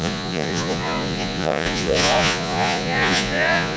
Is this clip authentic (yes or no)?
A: no